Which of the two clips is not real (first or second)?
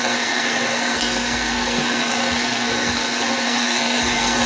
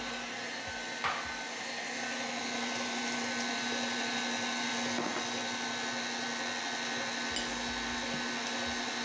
first